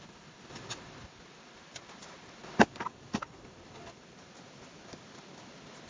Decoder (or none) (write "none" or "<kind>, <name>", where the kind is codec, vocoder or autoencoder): none